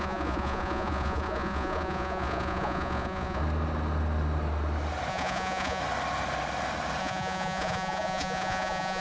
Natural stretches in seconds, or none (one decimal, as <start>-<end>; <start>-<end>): 3.4-5.1; 5.8-7.0